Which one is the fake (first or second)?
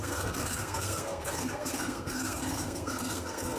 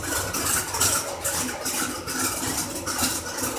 first